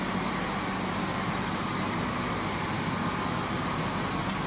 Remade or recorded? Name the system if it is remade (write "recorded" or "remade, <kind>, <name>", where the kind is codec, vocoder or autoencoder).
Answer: recorded